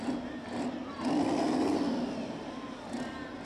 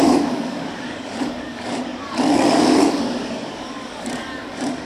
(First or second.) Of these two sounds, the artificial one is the second